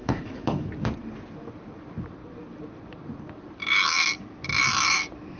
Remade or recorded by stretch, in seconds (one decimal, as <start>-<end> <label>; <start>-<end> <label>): 0.0-0.7 remade; 0.7-5.4 recorded